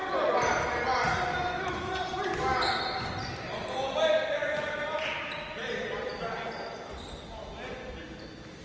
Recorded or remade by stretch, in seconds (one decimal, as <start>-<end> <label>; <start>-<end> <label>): 0.0-1.3 recorded; 1.3-1.9 remade; 1.9-8.6 recorded

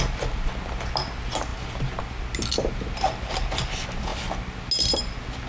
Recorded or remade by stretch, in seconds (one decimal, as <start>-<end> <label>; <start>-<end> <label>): 0.0-5.5 recorded

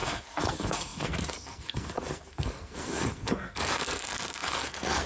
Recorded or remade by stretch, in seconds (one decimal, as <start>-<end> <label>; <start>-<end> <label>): 0.0-5.1 remade

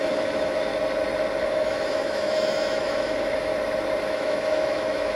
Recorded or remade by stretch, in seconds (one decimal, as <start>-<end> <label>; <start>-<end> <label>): 0.0-0.7 remade; 0.7-1.4 recorded; 1.4-3.5 remade; 3.5-4.0 recorded; 4.0-5.2 remade